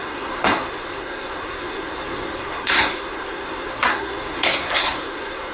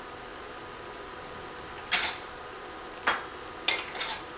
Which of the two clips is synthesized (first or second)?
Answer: first